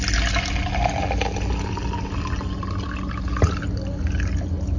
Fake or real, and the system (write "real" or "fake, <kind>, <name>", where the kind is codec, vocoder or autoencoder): real